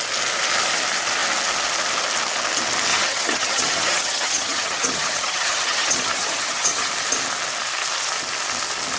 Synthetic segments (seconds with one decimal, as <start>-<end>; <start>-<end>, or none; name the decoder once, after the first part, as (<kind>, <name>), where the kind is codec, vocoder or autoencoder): 2.9-6.9 (vocoder, HiFi-GAN)